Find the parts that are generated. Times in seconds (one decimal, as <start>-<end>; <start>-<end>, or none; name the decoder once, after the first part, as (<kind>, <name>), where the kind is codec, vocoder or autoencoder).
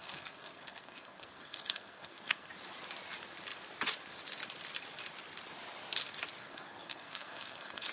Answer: 0.0-2.5 (codec, SNAC); 6.4-7.9